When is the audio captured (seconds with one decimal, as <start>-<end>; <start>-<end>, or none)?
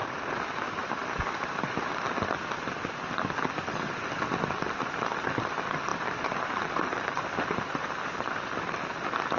1.9-5.9; 8.8-9.4